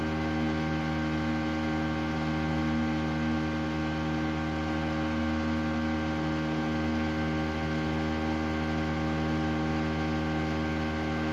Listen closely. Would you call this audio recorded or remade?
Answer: recorded